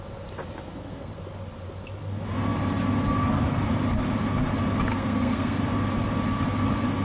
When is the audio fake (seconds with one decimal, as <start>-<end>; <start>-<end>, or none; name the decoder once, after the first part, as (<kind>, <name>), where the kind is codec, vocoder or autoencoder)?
0.7-1.2 (codec, SNAC); 4.9-5.6